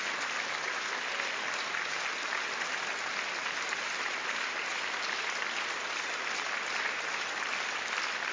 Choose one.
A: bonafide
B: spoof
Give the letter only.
A